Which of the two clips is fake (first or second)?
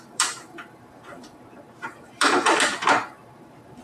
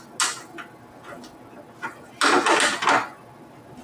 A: first